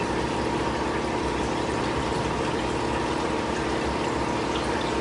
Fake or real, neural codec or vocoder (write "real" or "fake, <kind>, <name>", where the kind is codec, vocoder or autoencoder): fake, vocoder, BigVGAN v2